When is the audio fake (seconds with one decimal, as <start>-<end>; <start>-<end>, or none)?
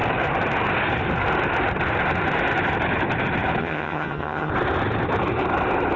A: 3.6-4.5